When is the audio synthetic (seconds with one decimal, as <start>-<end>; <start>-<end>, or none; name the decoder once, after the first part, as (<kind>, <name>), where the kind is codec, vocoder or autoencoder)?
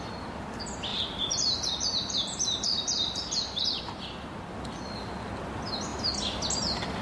0.9-3.8 (vocoder, BigVGAN v2)